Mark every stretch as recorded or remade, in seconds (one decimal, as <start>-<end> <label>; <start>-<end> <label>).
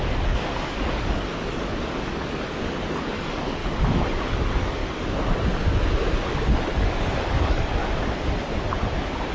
0.0-3.6 remade; 3.6-4.2 recorded; 4.2-4.8 remade; 4.8-6.7 recorded; 6.7-7.8 remade; 7.8-9.3 recorded